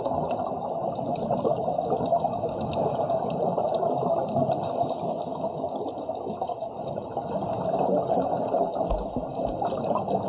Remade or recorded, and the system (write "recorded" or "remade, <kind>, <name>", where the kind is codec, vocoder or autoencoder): recorded